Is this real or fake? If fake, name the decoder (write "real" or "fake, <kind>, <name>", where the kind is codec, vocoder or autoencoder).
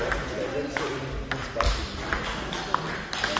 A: real